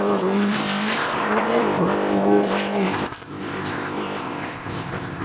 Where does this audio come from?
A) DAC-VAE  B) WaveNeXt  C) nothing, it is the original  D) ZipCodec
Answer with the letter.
D